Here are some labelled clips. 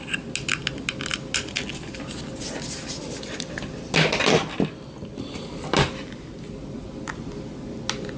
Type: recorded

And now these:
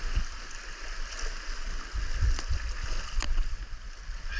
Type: recorded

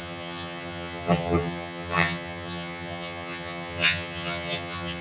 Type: remade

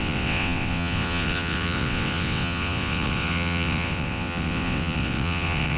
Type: remade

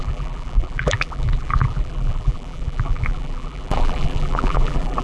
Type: remade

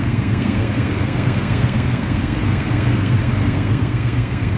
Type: remade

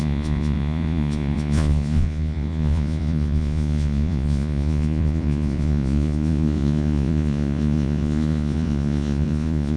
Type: remade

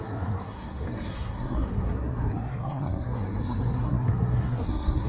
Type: remade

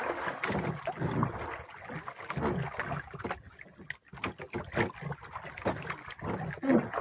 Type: recorded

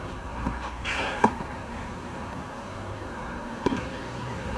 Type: remade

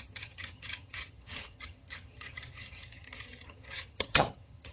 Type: remade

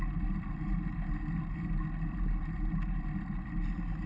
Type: recorded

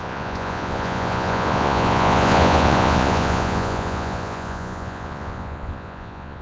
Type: remade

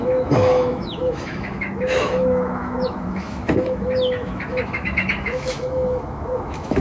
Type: remade